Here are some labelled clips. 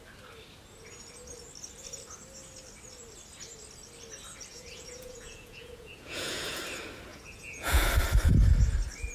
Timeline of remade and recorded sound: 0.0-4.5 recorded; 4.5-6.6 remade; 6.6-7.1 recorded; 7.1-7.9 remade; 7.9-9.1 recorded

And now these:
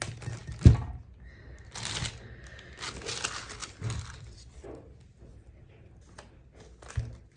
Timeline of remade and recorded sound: 0.0-3.6 recorded; 3.6-6.9 remade; 6.9-7.4 recorded

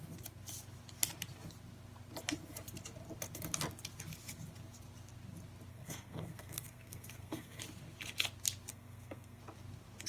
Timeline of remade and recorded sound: 0.0-5.7 recorded; 5.7-7.6 remade; 7.6-8.7 recorded; 8.7-9.4 remade; 9.4-10.1 recorded

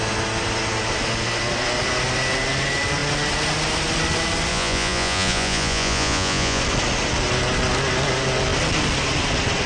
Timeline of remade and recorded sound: 0.0-4.5 recorded; 4.5-6.6 remade; 6.6-9.7 recorded

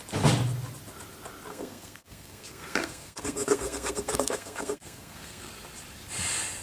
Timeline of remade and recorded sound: 0.0-1.5 recorded; 1.5-5.5 remade; 5.5-6.6 recorded

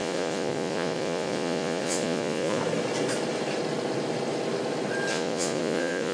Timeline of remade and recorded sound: 0.0-2.6 remade; 2.6-5.1 recorded; 5.1-6.1 remade

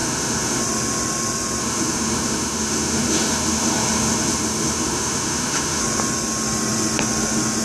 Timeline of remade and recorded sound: 0.0-0.6 remade; 0.6-1.6 recorded; 1.6-5.8 remade; 5.8-7.6 recorded

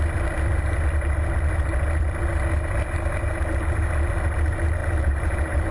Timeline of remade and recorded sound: 0.0-4.8 recorded; 4.8-5.7 remade